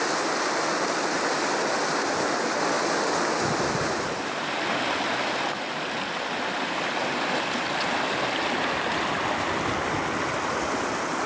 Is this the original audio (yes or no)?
yes